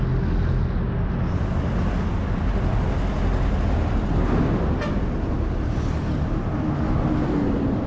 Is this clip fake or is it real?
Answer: real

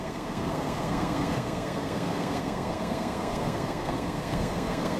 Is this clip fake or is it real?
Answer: fake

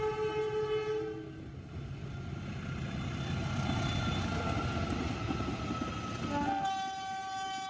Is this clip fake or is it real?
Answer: real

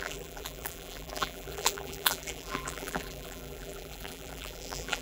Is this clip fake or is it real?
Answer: fake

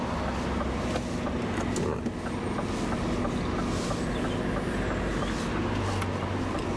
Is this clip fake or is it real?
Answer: real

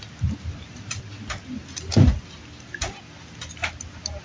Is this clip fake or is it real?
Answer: real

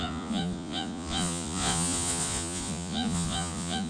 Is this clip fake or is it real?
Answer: fake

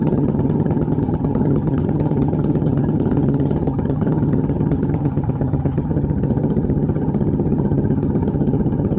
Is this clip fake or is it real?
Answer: fake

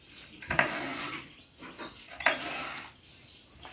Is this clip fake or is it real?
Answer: real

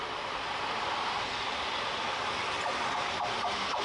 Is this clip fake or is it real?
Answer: real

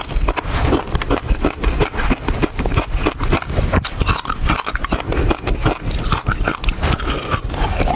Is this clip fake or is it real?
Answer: real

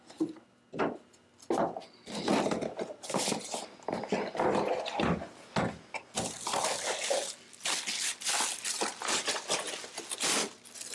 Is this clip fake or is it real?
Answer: real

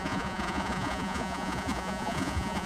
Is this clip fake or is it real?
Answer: fake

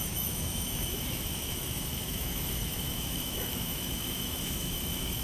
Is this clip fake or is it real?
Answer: fake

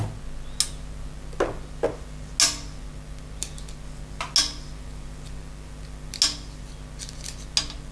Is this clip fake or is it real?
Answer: real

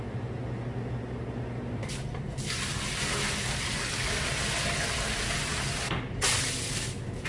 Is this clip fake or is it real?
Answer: real